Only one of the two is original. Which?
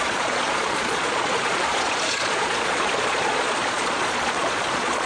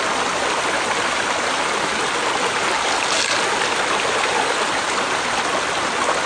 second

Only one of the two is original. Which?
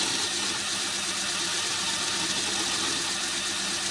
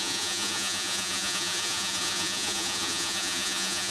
first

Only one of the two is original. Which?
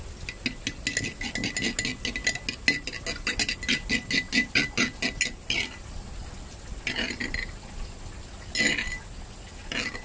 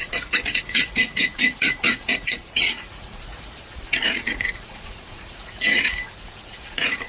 first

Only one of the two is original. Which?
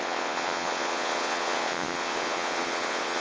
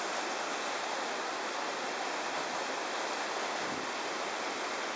second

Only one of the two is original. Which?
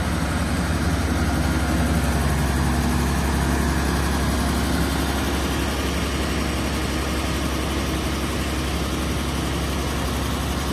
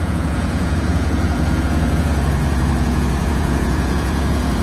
first